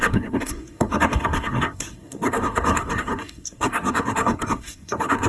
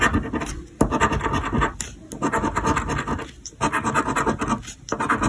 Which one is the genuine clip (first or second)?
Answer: second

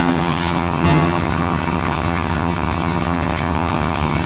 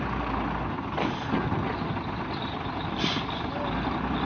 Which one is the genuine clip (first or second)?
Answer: second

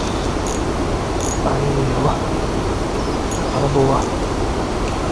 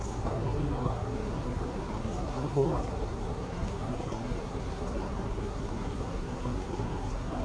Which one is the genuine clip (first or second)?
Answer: first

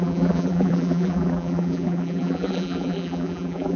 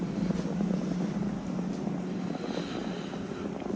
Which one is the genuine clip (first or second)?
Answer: second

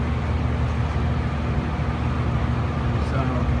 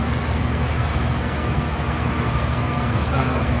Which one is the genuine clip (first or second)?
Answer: first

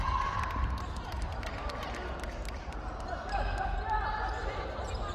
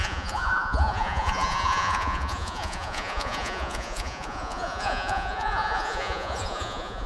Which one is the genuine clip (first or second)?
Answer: first